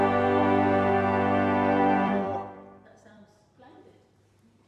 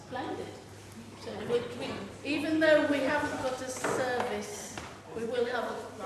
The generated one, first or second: first